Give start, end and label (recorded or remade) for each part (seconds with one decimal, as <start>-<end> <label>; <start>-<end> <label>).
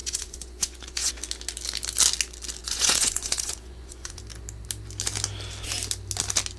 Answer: 0.0-1.1 remade; 1.1-2.6 recorded; 2.6-4.2 remade; 4.2-6.6 recorded